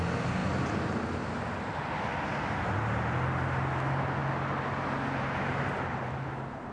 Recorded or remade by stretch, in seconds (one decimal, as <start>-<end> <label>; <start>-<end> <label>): 0.0-6.7 recorded